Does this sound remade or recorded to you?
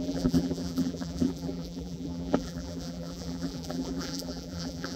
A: remade